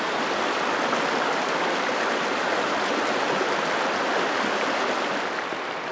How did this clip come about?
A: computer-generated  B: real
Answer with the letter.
B